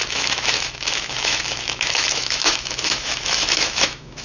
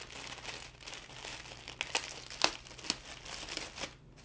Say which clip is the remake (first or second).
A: first